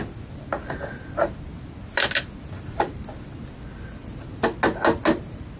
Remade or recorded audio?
recorded